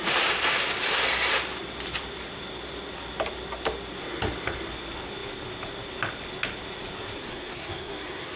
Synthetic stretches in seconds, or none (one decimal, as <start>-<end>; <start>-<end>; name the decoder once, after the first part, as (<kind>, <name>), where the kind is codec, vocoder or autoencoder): 7.2-8.4 (codec, SNAC)